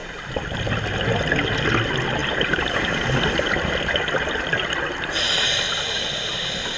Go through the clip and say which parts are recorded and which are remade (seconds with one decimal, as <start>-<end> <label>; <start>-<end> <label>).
0.0-2.2 recorded; 2.2-3.0 remade; 3.0-6.8 recorded